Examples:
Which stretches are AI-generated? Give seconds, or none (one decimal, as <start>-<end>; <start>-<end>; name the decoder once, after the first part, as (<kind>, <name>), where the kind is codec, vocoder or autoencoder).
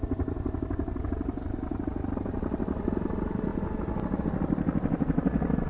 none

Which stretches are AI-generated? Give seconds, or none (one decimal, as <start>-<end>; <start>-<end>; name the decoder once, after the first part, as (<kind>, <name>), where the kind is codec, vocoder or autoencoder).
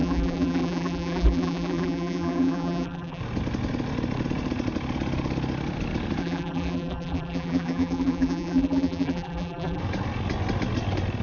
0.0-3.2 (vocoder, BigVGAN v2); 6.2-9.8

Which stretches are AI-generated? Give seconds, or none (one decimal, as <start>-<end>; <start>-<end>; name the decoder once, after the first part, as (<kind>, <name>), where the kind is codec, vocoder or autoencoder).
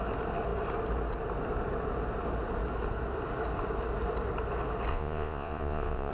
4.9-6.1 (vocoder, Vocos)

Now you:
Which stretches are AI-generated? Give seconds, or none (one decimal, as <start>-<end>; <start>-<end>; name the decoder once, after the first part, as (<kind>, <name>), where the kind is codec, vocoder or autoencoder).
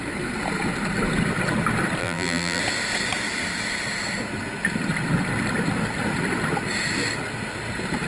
2.0-2.6 (vocoder, BigVGAN v2)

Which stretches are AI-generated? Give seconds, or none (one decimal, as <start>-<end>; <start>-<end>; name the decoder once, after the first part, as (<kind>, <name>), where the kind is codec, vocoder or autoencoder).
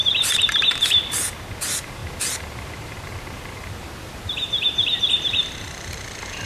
1.6-6.5 (vocoder, BigVGAN v2)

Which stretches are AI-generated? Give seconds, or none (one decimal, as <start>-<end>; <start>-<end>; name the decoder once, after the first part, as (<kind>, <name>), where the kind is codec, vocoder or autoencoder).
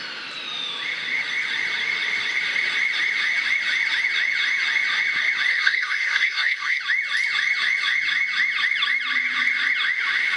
5.5-6.8 (codec, SNAC)